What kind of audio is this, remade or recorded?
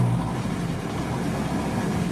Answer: recorded